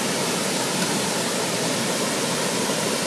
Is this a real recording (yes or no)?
yes